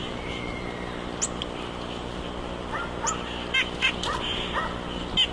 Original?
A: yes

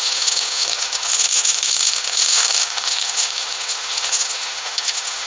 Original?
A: no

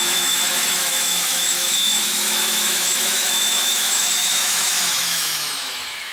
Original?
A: no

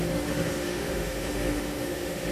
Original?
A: no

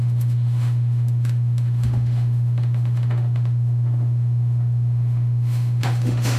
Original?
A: no